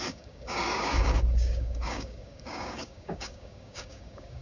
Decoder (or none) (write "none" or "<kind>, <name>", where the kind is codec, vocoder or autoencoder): codec, DAC